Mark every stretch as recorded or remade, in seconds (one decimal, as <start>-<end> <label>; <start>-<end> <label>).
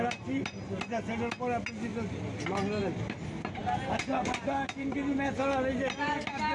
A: 0.0-6.5 recorded